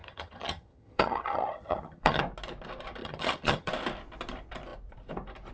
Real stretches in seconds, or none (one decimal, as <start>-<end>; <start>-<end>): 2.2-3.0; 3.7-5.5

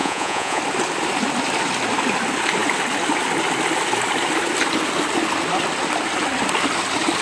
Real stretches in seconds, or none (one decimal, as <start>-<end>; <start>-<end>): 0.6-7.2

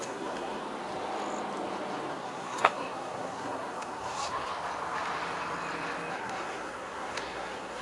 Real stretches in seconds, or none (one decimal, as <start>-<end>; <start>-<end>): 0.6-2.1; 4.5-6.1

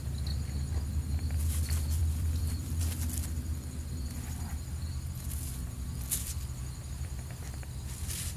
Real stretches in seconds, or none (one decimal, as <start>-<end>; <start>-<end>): 0.0-2.0; 2.8-8.4

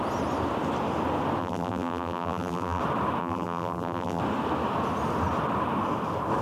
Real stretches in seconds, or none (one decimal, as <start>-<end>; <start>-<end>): 0.0-1.4; 2.8-3.2; 4.2-6.4

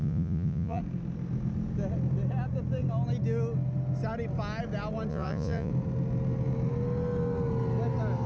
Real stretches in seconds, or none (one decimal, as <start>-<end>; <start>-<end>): 0.8-5.1; 5.7-8.3

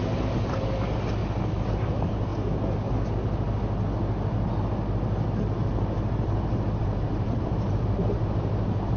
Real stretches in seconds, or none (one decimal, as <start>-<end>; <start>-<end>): 1.2-1.7; 2.3-6.8

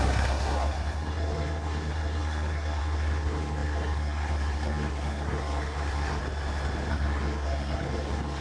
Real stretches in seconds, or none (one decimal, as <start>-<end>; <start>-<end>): 6.2-6.9